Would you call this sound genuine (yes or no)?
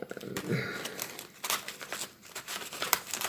no